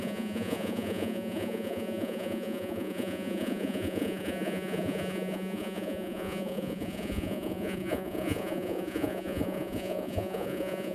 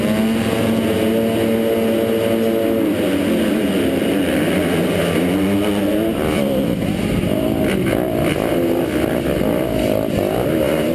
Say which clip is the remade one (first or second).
first